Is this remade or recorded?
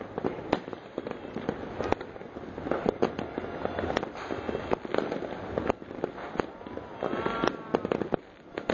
recorded